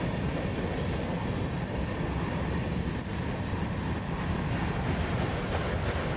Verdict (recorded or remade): recorded